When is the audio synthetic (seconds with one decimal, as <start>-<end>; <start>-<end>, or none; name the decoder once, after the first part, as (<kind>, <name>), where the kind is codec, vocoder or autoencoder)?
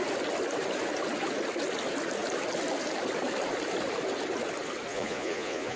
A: 4.9-5.8 (vocoder, Vocos)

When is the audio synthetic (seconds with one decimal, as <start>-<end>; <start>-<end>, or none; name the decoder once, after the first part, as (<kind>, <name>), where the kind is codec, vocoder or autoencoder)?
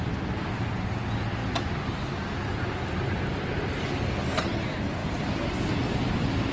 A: 5.0-6.1 (vocoder, BigVGAN v2)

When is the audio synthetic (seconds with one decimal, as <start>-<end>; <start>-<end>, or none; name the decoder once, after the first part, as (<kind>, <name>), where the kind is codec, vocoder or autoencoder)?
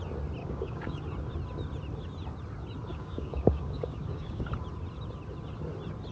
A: 0.4-1.0 (codec, DAC); 2.9-4.5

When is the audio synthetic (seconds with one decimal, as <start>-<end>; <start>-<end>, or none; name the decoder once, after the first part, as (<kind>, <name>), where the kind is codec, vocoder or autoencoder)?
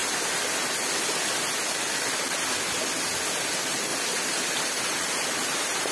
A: 3.5-3.9 (vocoder, BigVGAN v2); 4.8-5.9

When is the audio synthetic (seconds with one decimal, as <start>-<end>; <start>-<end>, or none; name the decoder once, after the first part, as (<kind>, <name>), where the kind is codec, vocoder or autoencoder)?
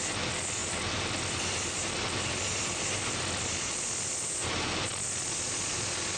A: none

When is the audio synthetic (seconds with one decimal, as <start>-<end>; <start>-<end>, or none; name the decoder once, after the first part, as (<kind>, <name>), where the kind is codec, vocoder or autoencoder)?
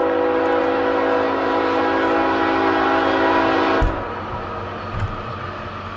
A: none